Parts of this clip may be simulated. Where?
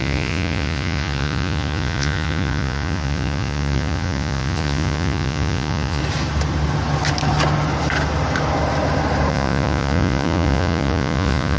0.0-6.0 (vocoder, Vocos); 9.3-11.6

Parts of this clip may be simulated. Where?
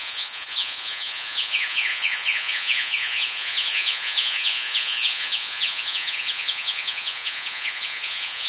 0.0-8.5 (vocoder, Vocos)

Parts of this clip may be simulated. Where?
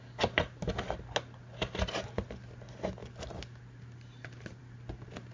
none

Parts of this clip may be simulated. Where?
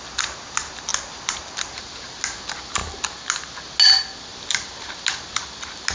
none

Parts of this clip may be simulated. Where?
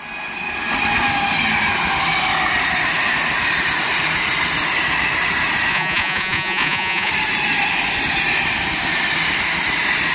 5.7-7.1 (vocoder, Vocos)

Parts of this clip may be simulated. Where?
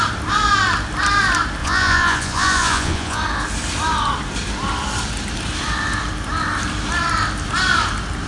1.6-3.2 (vocoder, Vocos)